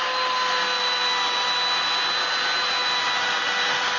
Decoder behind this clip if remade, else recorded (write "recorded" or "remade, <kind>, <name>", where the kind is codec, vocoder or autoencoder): recorded